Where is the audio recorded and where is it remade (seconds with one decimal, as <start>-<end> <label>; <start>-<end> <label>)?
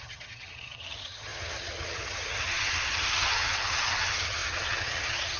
0.0-5.4 remade